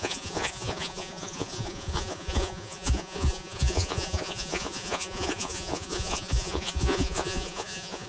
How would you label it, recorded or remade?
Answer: remade